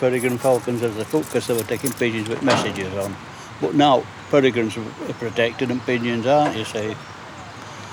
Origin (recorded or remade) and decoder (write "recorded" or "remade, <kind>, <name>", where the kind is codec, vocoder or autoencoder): recorded